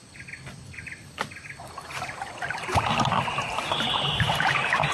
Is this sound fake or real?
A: real